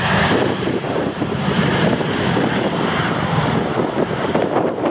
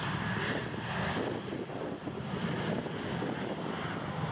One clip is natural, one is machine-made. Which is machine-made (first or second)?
first